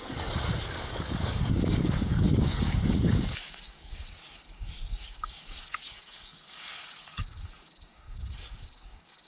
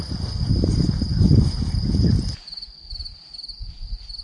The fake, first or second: first